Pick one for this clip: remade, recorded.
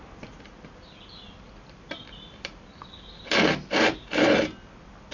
remade